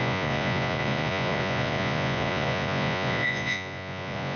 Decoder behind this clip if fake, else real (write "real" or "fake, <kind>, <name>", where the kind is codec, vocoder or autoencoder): fake, vocoder, Vocos